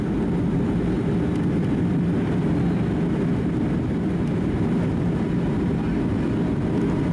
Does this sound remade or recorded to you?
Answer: recorded